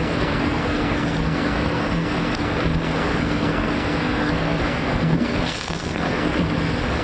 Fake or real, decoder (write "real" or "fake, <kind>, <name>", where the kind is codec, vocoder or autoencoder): fake, codec, SNAC